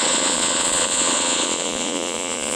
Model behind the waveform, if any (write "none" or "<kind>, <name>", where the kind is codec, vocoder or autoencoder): vocoder, Vocos